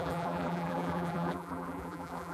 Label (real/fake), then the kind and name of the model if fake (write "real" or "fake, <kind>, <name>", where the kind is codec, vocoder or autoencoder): fake, vocoder, BigVGAN v2